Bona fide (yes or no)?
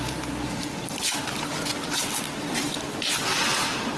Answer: yes